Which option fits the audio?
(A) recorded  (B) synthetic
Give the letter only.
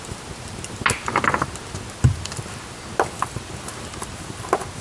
A